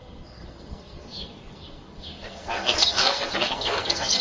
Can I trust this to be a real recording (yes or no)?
no